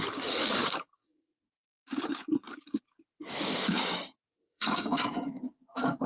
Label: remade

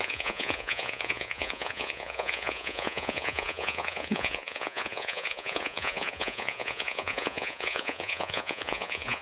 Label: remade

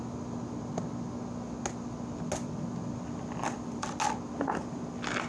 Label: recorded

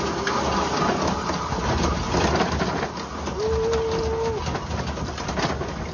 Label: recorded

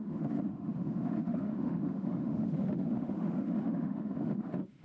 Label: remade